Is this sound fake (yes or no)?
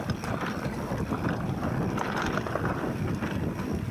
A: no